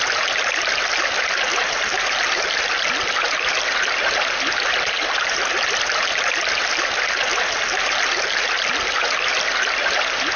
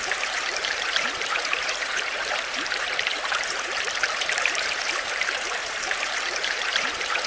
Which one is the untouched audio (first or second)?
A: first